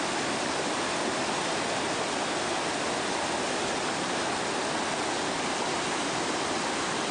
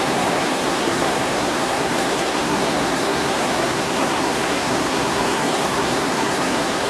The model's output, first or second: second